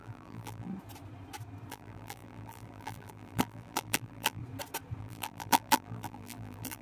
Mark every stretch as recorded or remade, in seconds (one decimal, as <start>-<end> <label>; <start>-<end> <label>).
0.0-0.7 remade; 0.7-1.7 recorded; 1.7-4.4 remade; 4.4-5.0 recorded; 5.0-6.8 remade